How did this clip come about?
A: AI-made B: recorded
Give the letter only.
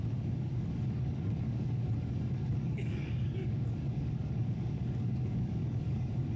A